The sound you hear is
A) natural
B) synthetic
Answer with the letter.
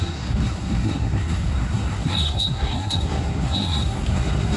B